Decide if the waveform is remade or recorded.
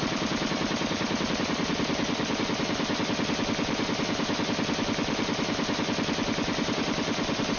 recorded